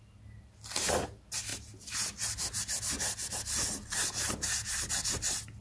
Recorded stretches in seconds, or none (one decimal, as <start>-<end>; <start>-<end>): 0.0-5.6